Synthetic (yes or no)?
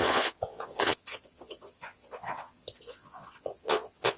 yes